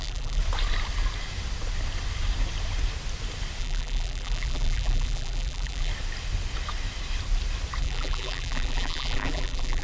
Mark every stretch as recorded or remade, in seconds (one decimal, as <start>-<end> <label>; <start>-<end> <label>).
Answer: 0.0-0.4 remade; 0.4-3.6 recorded; 3.6-5.9 remade; 5.9-7.8 recorded; 7.8-9.8 remade